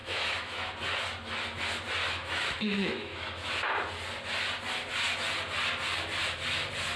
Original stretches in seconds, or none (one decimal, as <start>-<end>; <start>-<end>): 0.7-2.0; 3.6-7.0